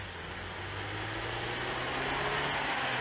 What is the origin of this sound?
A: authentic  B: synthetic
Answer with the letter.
A